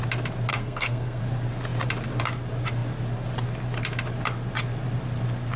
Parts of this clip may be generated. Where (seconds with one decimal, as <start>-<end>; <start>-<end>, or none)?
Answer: 0.5-1.2